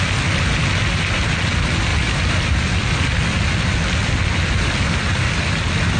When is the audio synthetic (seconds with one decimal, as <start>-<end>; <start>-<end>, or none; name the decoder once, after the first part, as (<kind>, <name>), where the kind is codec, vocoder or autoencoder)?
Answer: none